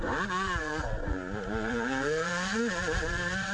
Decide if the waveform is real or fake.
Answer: fake